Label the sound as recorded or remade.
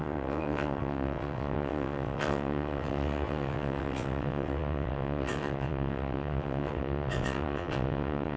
remade